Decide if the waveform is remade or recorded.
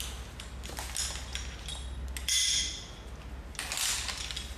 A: recorded